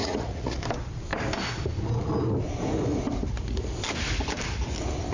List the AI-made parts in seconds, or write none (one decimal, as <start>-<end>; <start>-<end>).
0.0-0.6